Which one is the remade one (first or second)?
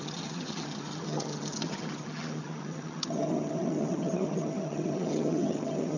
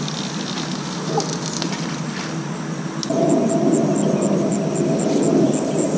first